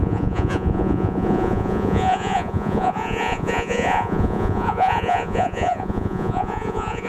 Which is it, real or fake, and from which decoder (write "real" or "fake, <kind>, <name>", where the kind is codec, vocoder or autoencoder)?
fake, vocoder, Vocos